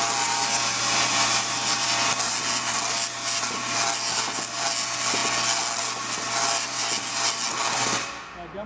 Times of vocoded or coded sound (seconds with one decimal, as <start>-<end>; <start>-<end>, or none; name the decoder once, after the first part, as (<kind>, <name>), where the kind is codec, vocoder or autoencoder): none